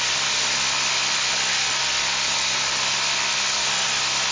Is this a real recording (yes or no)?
yes